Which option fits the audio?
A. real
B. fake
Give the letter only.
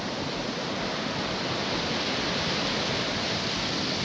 A